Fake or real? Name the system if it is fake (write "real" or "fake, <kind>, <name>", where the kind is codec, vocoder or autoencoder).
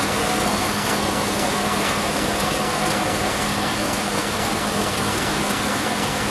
fake, codec, SNAC